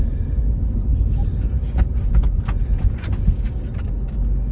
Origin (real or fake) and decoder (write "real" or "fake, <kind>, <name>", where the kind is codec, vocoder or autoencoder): real